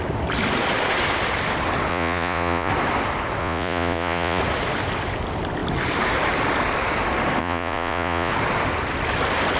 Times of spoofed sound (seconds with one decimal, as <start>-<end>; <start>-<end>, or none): 1.9-2.7; 3.4-4.4; 7.4-8.3